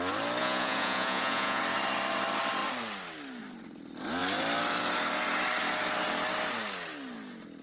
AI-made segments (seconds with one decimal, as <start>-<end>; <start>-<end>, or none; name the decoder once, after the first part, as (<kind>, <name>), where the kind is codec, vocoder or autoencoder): 0.4-1.6 (vocoder, Vocos)